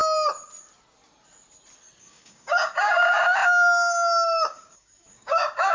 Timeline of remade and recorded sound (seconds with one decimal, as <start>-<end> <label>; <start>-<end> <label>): 0.0-2.0 recorded; 2.0-5.7 remade